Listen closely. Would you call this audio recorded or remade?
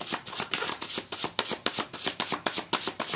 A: recorded